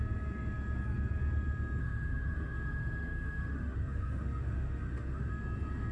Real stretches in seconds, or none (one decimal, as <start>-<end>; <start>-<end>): 0.0-1.8; 5.3-5.9